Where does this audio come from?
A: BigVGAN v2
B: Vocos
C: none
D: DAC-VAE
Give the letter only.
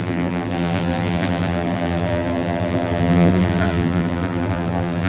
A